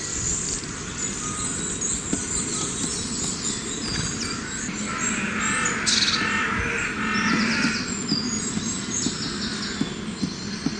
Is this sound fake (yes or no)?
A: no